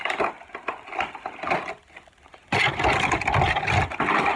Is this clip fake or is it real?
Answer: real